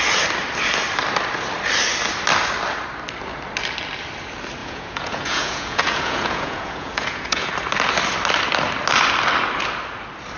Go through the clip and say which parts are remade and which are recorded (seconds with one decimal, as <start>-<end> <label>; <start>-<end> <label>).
0.0-4.6 recorded; 4.6-7.5 remade; 7.5-10.4 recorded